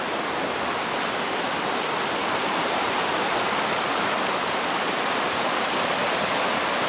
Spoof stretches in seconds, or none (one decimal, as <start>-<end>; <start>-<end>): 2.2-3.6